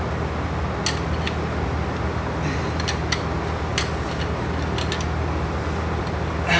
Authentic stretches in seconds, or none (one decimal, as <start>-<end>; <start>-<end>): 0.0-6.6

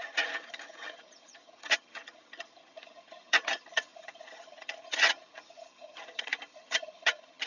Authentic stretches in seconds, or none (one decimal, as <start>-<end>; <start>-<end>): none

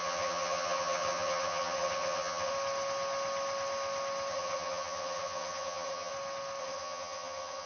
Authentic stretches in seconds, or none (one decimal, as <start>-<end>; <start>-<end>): 2.5-4.3; 6.1-6.6

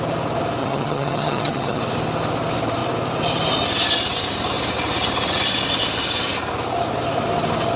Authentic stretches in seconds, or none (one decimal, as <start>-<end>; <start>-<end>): 0.0-0.6; 1.8-7.8

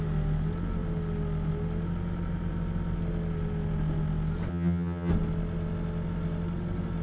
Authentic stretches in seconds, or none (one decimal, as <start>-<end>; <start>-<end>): 0.0-4.5; 5.1-7.0

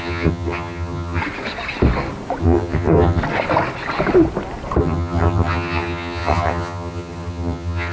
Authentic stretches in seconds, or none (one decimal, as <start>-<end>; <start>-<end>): 1.2-2.4; 3.2-4.8

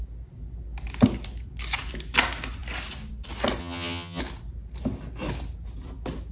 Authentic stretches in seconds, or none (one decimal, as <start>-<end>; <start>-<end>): 0.0-3.6; 4.2-6.3

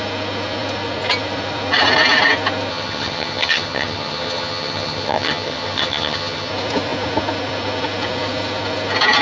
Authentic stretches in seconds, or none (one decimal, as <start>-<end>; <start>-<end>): 0.0-2.7; 6.5-9.2